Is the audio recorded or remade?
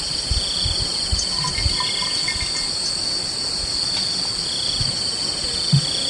recorded